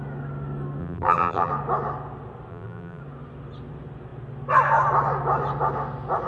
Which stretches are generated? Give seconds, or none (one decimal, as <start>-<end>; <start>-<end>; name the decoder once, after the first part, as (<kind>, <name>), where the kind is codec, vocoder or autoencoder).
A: 0.8-1.5 (vocoder, BigVGAN v2); 2.5-3.0